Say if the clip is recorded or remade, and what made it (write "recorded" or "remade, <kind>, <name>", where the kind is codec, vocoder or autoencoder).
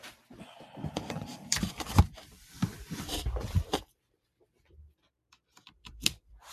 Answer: remade, vocoder, BigVGAN v2